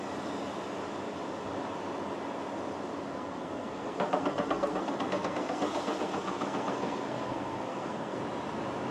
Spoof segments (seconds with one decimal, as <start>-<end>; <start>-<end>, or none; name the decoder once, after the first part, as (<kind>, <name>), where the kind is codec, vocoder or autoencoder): 3.1-8.2 (codec, SNAC)